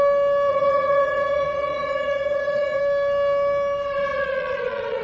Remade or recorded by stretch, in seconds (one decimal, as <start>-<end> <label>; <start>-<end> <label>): 0.0-0.5 recorded; 0.5-2.8 remade; 2.8-4.1 recorded; 4.1-5.0 remade